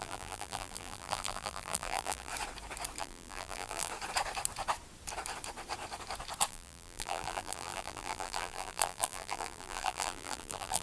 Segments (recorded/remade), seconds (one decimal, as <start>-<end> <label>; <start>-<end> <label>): 0.0-2.3 remade; 2.3-3.0 recorded; 3.0-3.9 remade; 3.9-6.5 recorded; 6.5-10.8 remade